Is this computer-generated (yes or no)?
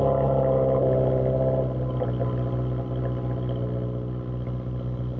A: no